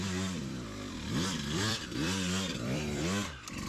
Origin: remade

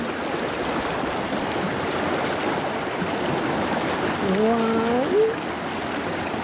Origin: recorded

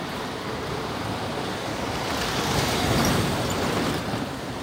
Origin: remade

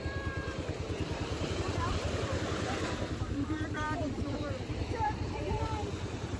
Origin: remade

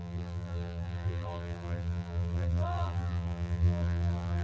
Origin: remade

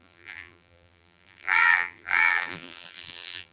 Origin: remade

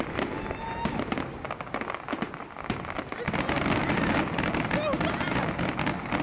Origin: recorded